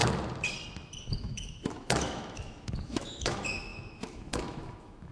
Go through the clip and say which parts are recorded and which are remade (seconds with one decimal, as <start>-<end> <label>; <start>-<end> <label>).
0.0-1.0 recorded; 1.0-5.1 remade